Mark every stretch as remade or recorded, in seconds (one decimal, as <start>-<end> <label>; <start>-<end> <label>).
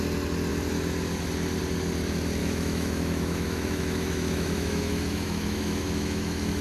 0.0-2.4 recorded; 2.4-6.6 remade